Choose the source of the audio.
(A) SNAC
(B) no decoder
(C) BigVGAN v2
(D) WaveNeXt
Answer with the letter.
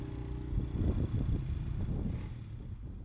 B